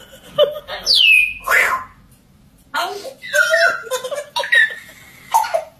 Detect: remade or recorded recorded